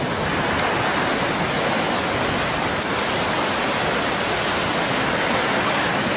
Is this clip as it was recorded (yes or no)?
yes